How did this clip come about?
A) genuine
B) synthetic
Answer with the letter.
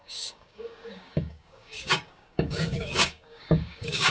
B